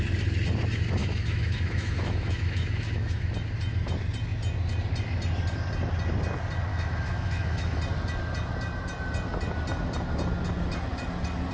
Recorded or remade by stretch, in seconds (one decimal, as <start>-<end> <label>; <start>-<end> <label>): 0.0-1.0 recorded; 1.0-3.3 remade; 3.3-6.7 recorded; 6.7-7.8 remade; 7.8-11.5 recorded